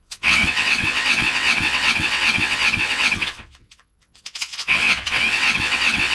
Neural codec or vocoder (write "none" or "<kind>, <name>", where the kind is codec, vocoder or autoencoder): vocoder, WaveNeXt